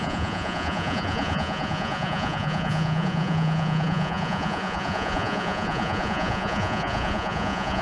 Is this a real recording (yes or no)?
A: no